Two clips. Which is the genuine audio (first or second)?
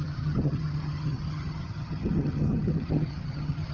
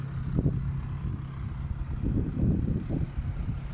second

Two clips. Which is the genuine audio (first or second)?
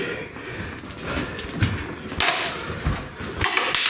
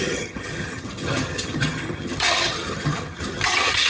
first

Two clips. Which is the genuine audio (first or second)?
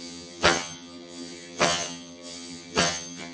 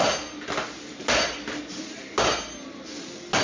second